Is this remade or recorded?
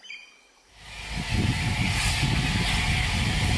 recorded